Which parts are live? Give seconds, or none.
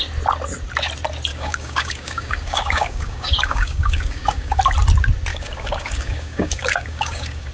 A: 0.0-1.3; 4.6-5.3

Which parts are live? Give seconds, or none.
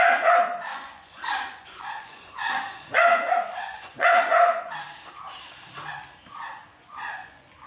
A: 0.0-0.7; 4.7-6.7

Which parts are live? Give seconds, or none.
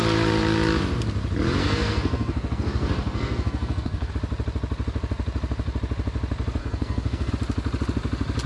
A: 0.0-1.6; 4.1-6.6; 7.3-8.5